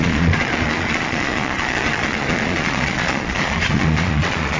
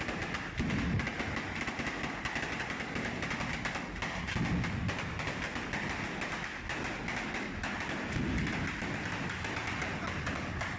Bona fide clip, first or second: second